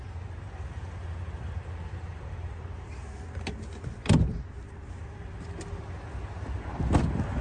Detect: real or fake real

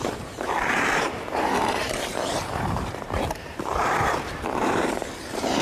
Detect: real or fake fake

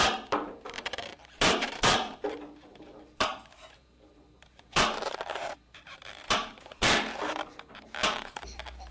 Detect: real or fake fake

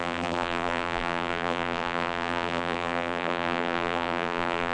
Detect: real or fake fake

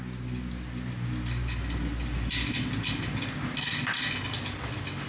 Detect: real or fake real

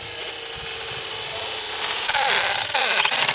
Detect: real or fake real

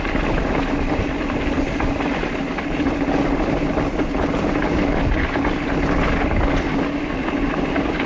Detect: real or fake real